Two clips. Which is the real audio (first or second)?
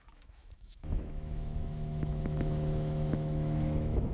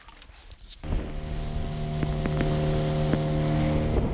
second